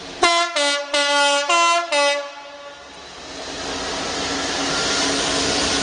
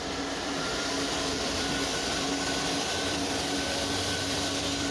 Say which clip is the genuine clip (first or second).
first